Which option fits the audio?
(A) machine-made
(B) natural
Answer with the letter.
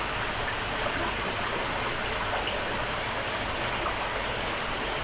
B